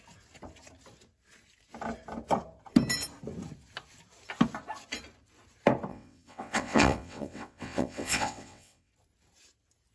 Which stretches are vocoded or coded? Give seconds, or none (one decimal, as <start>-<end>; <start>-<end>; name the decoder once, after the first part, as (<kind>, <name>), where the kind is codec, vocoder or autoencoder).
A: 5.9-8.9 (vocoder, WaveNeXt)